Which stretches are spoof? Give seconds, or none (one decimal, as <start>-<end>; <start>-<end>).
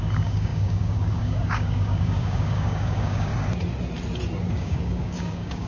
0.0-3.3; 4.5-5.7